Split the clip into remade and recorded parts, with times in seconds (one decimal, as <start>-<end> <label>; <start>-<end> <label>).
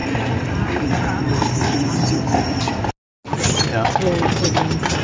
0.0-5.0 recorded